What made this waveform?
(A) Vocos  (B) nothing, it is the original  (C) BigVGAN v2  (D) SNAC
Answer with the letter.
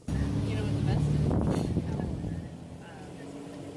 B